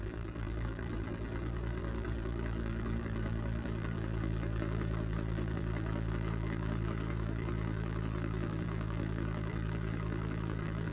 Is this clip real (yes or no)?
no